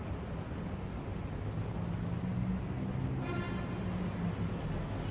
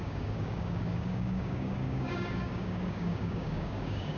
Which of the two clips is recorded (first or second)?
first